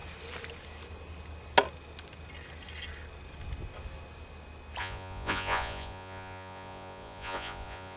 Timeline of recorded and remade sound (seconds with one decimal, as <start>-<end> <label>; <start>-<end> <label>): 0.0-4.8 recorded; 4.8-8.0 remade